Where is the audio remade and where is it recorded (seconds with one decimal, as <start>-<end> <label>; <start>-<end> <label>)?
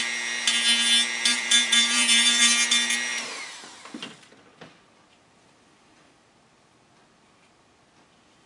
0.0-1.3 recorded; 1.3-2.4 remade; 2.4-8.5 recorded